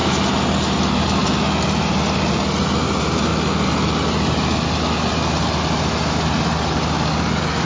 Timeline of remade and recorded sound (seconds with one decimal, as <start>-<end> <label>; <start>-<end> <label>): 0.0-7.7 recorded